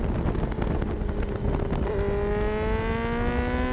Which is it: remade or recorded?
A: recorded